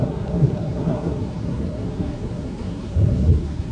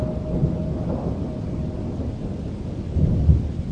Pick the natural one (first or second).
second